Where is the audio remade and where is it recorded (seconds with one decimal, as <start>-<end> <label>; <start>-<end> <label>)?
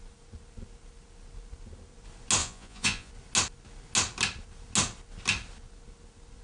0.0-2.4 recorded; 2.4-3.1 remade; 3.1-6.4 recorded